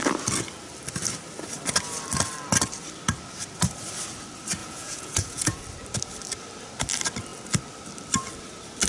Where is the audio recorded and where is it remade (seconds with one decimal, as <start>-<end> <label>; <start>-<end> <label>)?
0.0-4.6 recorded; 4.6-5.6 remade; 5.6-8.9 recorded